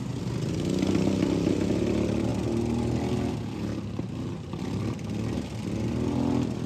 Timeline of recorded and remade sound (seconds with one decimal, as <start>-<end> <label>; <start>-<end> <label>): 0.0-6.7 recorded

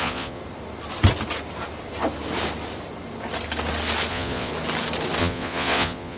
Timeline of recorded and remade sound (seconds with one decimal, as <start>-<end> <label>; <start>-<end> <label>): 0.0-0.4 remade; 0.4-4.1 recorded; 4.1-4.5 remade; 4.5-5.2 recorded; 5.2-6.2 remade

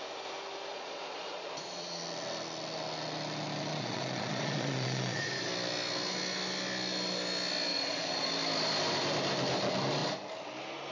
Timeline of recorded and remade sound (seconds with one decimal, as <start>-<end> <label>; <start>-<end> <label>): 0.0-0.7 recorded; 0.7-2.0 remade; 2.0-3.7 recorded; 3.7-5.5 remade; 5.5-7.7 recorded; 7.7-8.3 remade; 8.3-10.9 recorded

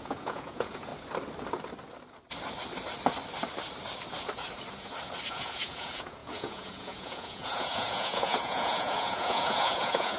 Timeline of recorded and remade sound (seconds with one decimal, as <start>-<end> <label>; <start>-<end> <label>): 0.0-0.9 remade; 0.9-5.3 recorded; 5.3-10.2 remade

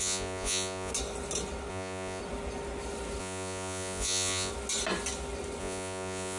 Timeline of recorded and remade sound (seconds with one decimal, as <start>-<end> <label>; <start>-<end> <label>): 0.0-0.9 remade; 0.9-1.7 recorded; 1.7-2.2 remade; 2.2-3.2 recorded; 3.2-4.5 remade; 4.5-5.6 recorded; 5.6-6.4 remade

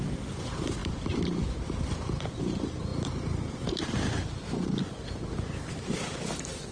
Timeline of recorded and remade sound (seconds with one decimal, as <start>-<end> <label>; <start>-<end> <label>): 0.0-6.7 recorded

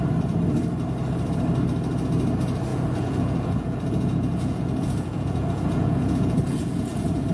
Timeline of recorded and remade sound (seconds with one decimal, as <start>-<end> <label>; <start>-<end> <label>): 0.0-2.7 recorded; 2.7-7.3 remade

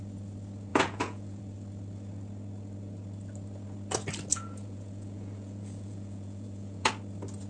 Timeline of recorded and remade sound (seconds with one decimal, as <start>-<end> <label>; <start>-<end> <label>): 0.0-0.7 recorded; 0.7-1.4 remade; 1.4-4.3 recorded; 4.3-6.9 remade; 6.9-7.5 recorded